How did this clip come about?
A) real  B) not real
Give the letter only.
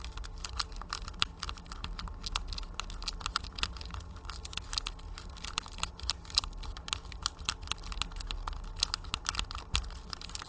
A